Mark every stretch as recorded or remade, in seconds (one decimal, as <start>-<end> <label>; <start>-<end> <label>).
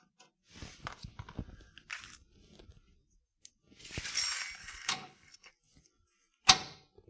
0.0-4.6 recorded; 4.6-5.5 remade; 5.5-7.1 recorded